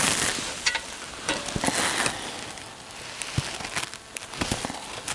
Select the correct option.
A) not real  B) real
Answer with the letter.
B